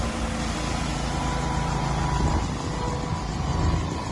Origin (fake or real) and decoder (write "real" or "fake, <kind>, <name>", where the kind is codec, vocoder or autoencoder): real